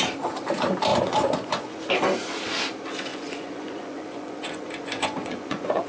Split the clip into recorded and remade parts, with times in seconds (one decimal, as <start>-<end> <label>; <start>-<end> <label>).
0.0-0.9 recorded; 0.9-1.8 remade; 1.8-3.1 recorded; 3.1-5.9 remade